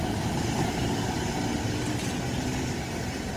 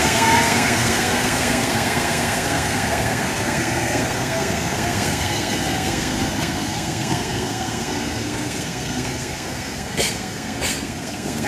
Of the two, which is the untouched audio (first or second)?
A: first